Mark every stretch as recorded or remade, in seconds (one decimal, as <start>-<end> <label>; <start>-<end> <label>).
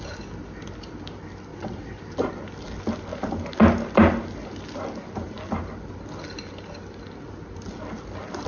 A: 0.0-1.5 recorded; 1.5-2.0 remade; 2.0-8.5 recorded